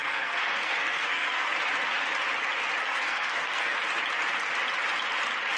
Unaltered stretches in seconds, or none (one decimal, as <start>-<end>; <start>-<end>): 1.5-2.8; 3.8-5.6